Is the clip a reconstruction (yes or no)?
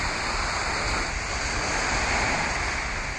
no